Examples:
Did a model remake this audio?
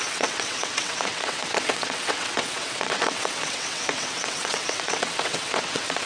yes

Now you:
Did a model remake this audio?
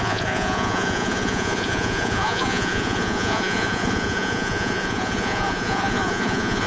yes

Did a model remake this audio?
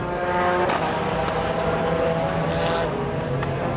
no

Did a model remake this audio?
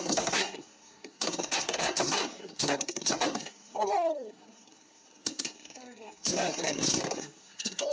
yes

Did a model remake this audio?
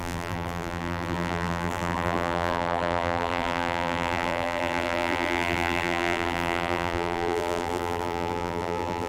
yes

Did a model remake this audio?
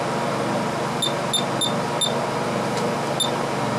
no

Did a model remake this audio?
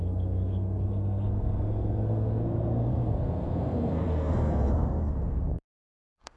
yes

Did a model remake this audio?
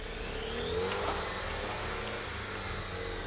no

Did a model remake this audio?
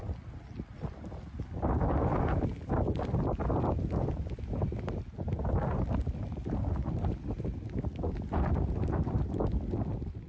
no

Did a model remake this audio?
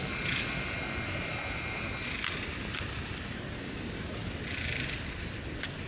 no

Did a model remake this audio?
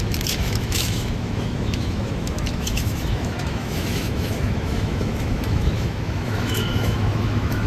yes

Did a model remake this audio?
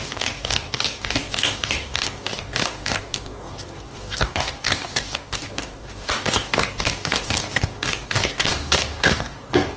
yes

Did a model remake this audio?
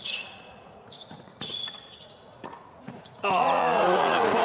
yes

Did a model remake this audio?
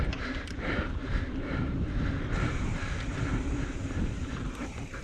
yes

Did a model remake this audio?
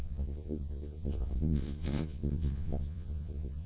yes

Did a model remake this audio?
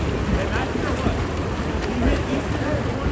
no